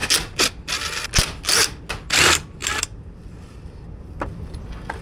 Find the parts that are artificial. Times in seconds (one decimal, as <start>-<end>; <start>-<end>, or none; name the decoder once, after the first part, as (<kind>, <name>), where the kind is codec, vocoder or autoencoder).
none